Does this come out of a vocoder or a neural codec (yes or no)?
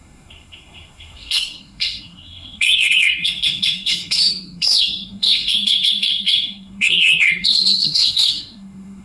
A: yes